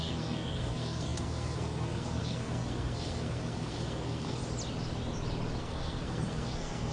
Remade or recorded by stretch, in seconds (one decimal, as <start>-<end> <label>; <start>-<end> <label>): 0.0-4.4 remade; 4.4-5.6 recorded; 5.6-6.9 remade